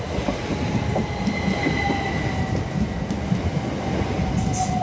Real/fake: real